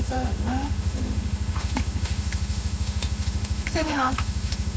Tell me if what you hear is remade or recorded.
remade